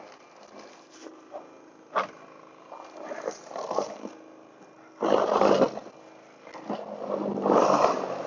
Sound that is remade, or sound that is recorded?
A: recorded